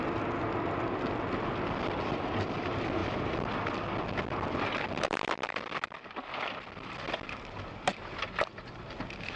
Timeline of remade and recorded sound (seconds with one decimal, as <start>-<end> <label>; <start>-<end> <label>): 0.0-9.4 recorded